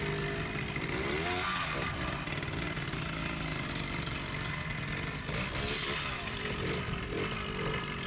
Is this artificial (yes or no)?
no